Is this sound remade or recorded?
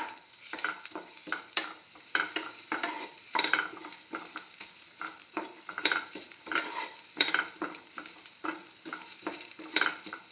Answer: remade